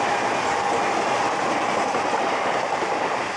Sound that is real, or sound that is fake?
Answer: real